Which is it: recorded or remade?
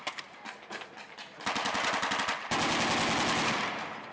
recorded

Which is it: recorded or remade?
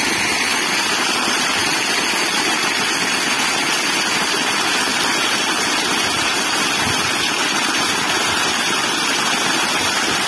recorded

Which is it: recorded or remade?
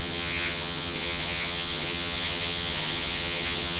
remade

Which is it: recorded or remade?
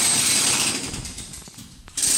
remade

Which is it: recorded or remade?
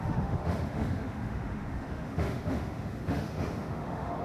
remade